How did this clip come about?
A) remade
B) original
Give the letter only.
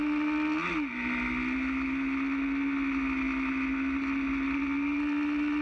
B